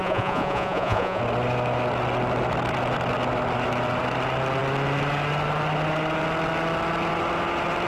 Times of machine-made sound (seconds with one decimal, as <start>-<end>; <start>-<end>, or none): 0.0-1.2